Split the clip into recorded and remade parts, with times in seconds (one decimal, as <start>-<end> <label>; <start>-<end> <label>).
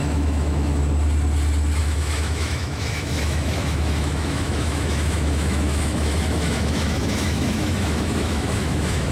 0.0-0.8 remade; 0.8-1.8 recorded; 1.8-9.1 remade